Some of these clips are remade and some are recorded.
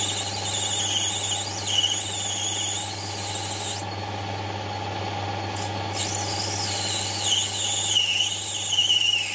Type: recorded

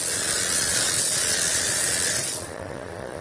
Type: remade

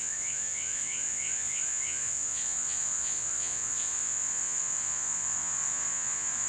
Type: remade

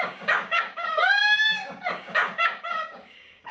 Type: remade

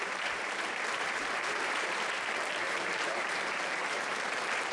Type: remade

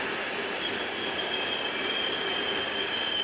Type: recorded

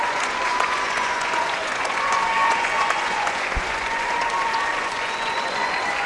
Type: remade